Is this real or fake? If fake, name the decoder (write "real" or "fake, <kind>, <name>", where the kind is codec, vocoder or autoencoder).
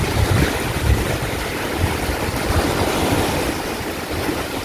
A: fake, vocoder, BigVGAN v2